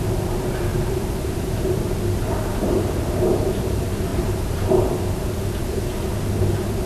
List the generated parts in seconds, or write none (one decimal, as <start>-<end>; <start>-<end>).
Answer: 0.7-2.0; 4.1-5.0